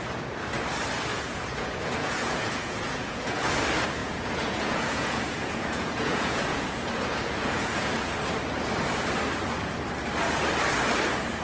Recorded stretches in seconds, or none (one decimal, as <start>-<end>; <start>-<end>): 0.0-1.1; 3.5-4.0; 8.1-11.4